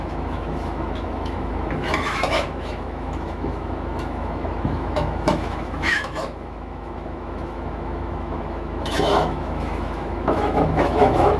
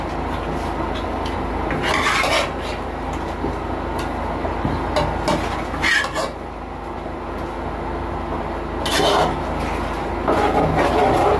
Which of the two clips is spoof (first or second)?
first